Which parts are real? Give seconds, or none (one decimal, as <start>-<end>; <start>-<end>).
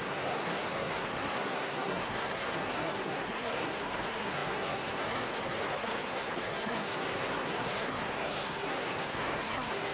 none